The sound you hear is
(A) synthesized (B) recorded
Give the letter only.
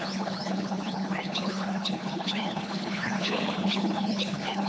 A